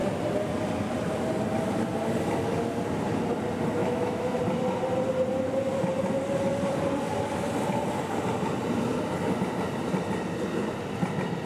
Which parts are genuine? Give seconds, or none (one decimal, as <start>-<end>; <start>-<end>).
0.0-3.8; 4.4-11.5